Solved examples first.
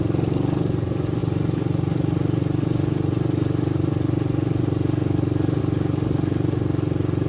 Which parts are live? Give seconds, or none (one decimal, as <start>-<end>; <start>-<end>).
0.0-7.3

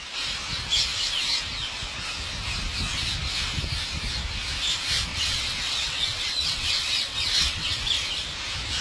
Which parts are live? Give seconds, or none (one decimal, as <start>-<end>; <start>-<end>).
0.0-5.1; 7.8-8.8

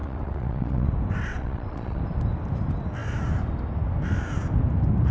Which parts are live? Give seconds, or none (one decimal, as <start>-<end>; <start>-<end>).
0.9-1.3; 2.0-5.1